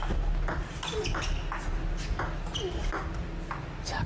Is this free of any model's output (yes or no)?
yes